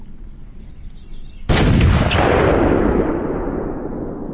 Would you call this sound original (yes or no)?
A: yes